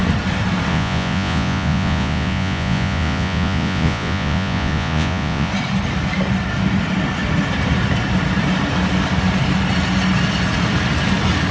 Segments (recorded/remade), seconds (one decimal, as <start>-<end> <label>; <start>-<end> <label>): 0.0-0.7 recorded; 0.7-5.5 remade; 5.5-11.5 recorded